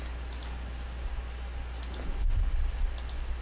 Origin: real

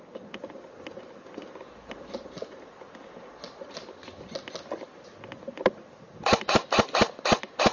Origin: real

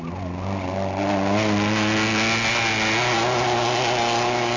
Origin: real